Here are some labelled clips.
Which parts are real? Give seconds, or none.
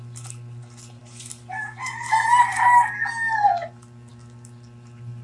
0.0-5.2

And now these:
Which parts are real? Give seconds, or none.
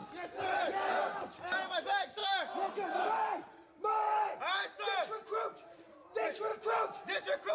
0.0-7.5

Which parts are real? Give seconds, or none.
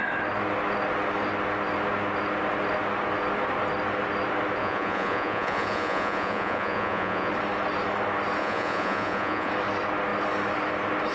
0.0-4.6; 7.3-8.4; 9.5-11.1